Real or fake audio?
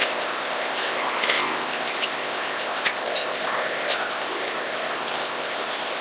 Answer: fake